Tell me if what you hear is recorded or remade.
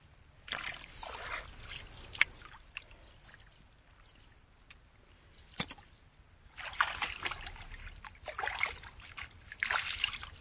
recorded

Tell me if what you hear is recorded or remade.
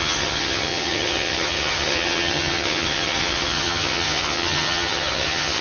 remade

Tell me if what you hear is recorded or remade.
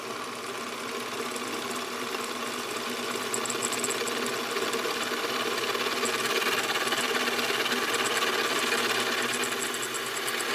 recorded